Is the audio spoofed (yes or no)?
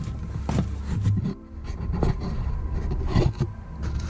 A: no